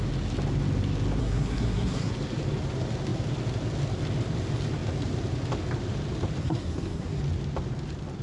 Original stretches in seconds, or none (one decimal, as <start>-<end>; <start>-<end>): 0.0-1.2; 2.1-6.4; 7.2-8.2

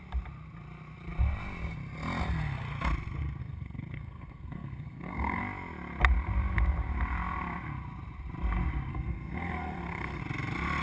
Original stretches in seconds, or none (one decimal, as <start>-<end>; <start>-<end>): 0.0-3.4; 5.4-8.9; 10.2-10.8